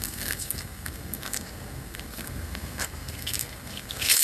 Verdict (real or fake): fake